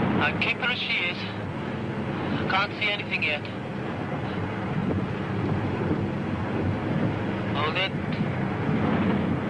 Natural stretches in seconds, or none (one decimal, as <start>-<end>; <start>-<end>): 0.0-9.5